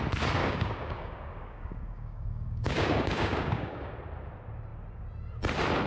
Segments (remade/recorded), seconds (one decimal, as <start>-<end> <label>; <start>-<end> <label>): 0.0-0.4 recorded; 0.4-3.9 remade; 3.9-5.9 recorded